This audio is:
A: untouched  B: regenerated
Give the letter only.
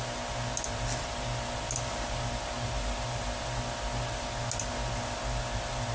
A